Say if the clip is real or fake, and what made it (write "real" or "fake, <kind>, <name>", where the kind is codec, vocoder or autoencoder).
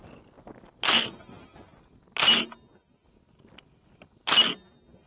real